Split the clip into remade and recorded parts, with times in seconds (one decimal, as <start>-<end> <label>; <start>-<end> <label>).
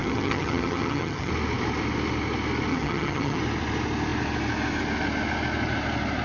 0.0-1.3 remade; 1.3-2.7 recorded; 2.7-3.4 remade; 3.4-6.2 recorded